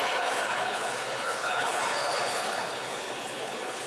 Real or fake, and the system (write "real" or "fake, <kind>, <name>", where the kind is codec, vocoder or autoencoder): fake, codec, HILCodec